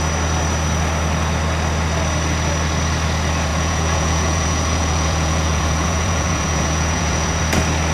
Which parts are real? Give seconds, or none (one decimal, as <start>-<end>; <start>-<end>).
0.0-3.5; 7.4-7.9